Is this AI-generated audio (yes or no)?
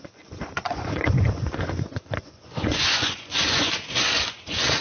yes